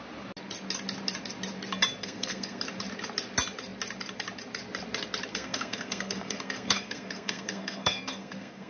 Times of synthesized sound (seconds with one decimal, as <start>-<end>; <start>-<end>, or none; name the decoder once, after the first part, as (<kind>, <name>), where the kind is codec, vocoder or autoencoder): 2.0-2.6 (codec, SNAC); 5.3-8.7